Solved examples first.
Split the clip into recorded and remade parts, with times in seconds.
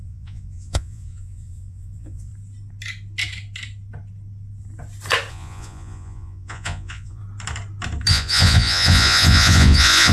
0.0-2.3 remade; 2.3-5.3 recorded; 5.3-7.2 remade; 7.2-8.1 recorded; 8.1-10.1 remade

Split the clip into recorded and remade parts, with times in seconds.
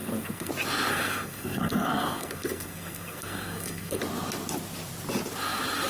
0.0-0.5 remade; 0.5-0.9 recorded; 0.9-4.0 remade; 4.0-5.9 recorded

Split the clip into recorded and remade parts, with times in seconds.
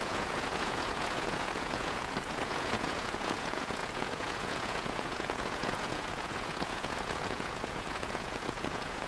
0.0-9.1 remade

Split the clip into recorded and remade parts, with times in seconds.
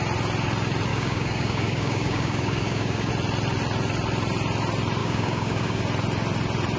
0.0-0.9 recorded; 0.9-3.1 remade; 3.1-5.0 recorded; 5.0-5.8 remade; 5.8-6.8 recorded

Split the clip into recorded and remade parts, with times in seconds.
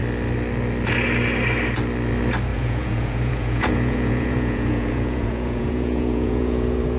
0.0-2.5 recorded; 2.5-7.0 remade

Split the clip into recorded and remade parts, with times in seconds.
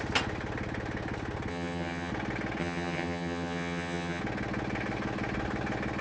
0.0-1.5 recorded; 1.5-2.1 remade; 2.1-2.6 recorded; 2.6-4.2 remade; 4.2-6.0 recorded